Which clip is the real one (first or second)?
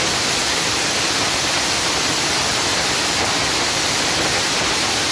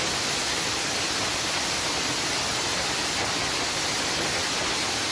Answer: second